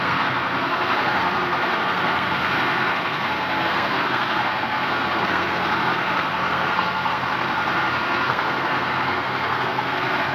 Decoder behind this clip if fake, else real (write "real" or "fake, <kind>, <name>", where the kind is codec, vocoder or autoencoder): fake, codec, SNAC